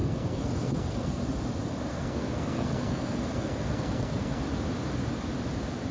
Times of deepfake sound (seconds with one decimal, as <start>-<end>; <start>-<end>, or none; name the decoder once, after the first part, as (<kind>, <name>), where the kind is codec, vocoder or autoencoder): 0.0-1.2 (codec, SNAC); 1.9-4.4